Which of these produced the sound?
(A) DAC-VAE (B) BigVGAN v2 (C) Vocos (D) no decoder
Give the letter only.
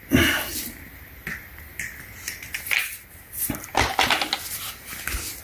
D